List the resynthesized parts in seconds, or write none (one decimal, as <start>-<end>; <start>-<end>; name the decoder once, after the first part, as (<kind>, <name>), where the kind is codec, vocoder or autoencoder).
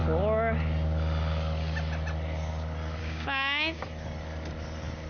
3.0-3.8 (codec, DAC)